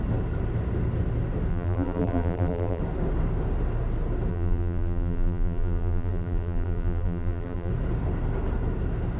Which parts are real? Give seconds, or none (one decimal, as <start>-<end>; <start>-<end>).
0.0-1.5; 2.8-4.3; 7.7-9.2

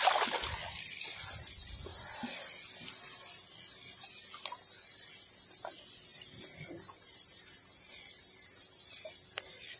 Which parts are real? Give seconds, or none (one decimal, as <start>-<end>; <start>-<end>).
0.0-9.8